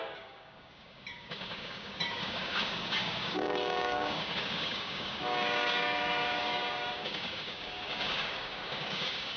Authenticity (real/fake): fake